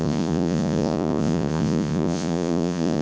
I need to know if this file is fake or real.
fake